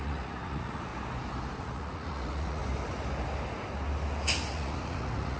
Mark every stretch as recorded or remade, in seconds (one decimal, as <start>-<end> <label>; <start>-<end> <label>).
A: 0.0-0.9 remade; 0.9-1.6 recorded; 1.6-2.6 remade; 2.6-4.5 recorded; 4.5-5.4 remade